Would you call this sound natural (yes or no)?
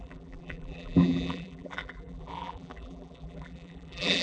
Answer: no